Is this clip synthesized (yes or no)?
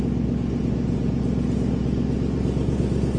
no